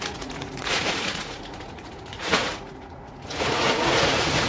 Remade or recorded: remade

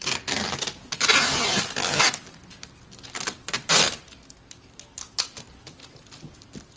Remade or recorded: recorded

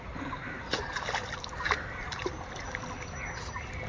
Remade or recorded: recorded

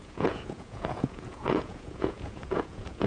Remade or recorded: remade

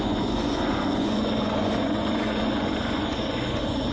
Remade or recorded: remade